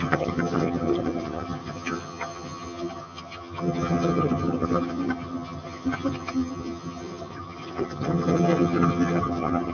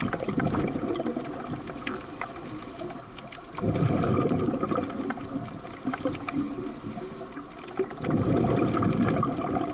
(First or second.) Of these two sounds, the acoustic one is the second